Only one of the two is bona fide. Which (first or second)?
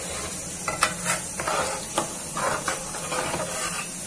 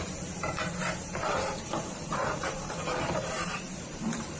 first